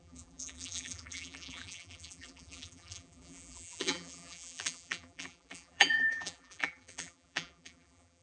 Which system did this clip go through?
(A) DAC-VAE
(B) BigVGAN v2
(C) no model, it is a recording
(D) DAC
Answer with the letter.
B